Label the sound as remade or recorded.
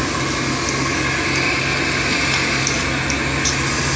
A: recorded